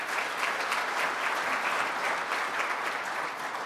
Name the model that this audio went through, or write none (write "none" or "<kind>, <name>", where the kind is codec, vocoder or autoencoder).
none